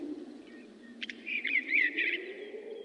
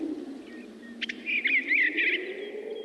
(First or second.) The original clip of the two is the second